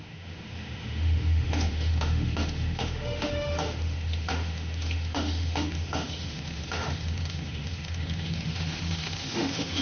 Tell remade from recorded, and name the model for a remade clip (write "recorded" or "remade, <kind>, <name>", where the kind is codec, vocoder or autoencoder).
remade, autoencoder, DAC-VAE